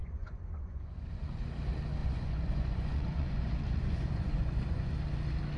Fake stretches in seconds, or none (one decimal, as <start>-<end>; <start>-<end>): 0.0-1.5; 2.0-4.9